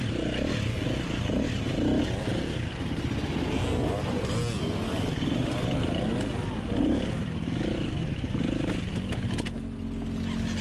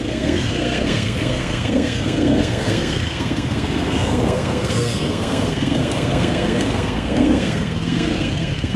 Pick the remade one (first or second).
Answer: second